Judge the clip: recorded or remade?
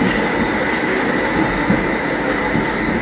recorded